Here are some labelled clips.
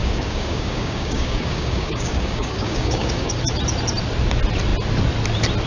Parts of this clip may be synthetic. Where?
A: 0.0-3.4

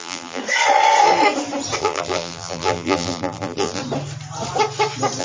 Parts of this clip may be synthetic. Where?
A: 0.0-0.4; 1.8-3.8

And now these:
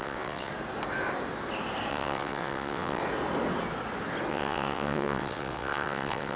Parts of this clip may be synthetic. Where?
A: 0.0-0.5; 1.9-3.0; 4.3-6.4